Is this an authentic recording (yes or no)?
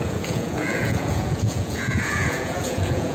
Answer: no